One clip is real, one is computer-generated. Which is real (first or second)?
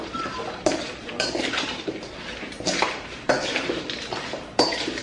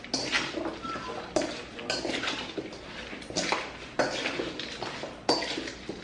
second